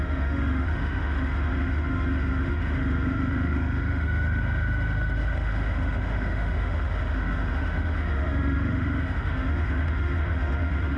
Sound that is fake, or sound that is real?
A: fake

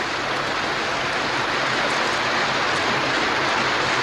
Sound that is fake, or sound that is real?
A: real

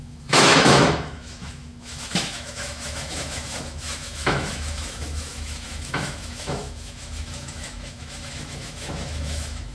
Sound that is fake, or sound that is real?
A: fake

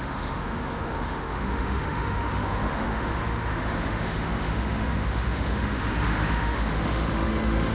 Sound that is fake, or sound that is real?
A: fake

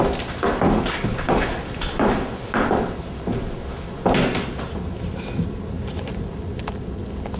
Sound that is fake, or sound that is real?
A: real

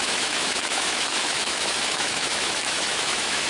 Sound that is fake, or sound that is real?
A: fake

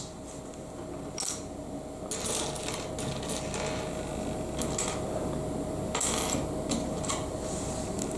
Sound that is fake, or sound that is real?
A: real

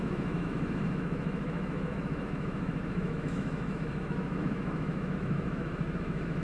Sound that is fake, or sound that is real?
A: fake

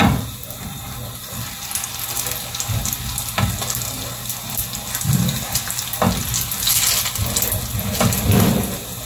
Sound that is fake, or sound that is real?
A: real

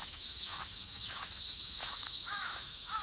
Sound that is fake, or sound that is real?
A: fake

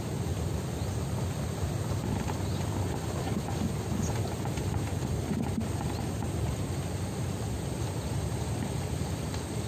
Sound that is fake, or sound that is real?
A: real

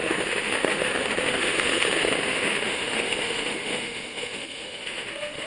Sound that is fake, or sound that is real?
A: fake